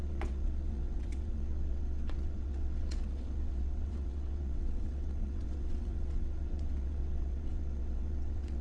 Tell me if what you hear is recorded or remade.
remade